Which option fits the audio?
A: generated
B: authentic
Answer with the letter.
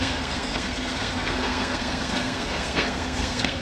A